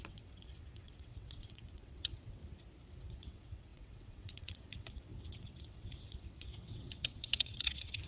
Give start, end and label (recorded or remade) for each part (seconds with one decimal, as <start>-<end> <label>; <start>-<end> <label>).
0.0-2.4 remade; 2.4-3.0 recorded; 3.0-8.1 remade